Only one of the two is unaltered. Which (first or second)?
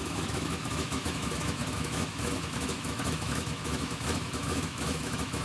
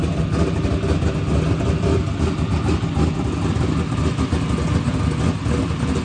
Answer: second